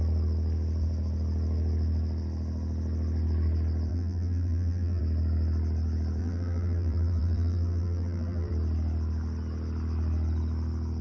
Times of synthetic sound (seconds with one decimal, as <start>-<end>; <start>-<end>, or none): 3.9-5.0; 6.2-8.5